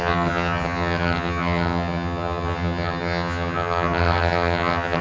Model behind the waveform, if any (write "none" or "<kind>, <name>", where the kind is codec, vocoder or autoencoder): vocoder, HiFi-GAN